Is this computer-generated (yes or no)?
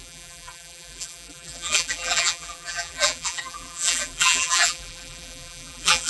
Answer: yes